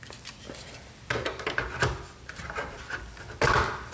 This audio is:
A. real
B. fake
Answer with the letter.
A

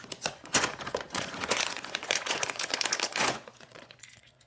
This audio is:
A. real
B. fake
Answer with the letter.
B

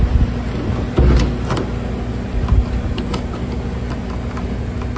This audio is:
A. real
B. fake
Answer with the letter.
A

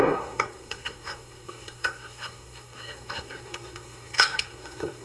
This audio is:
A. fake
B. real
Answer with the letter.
A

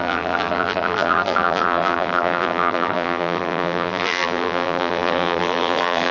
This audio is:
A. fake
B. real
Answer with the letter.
A